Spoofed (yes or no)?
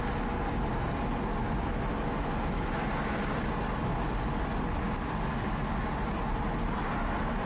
no